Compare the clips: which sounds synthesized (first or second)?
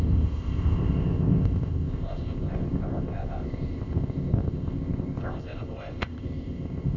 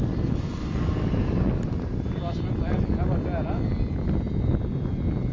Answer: first